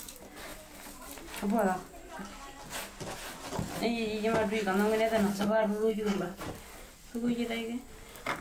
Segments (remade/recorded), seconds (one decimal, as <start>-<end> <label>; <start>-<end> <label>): 0.0-5.3 recorded; 5.3-6.4 remade; 6.4-8.4 recorded